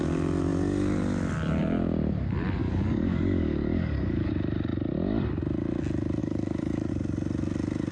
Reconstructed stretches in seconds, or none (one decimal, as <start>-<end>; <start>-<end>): 2.6-4.3; 6.2-6.9